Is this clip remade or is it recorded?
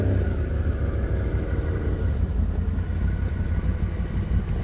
recorded